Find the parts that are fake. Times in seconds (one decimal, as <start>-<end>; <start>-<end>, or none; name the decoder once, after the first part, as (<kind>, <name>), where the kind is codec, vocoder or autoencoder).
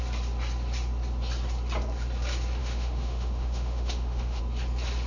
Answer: 2.6-4.4 (autoencoder, DAC-VAE)